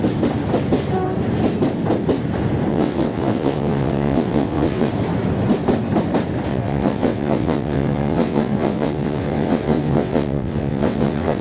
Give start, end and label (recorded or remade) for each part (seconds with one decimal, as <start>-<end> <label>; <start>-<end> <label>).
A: 0.0-2.7 recorded; 2.7-4.9 remade; 4.9-6.5 recorded; 6.5-11.4 remade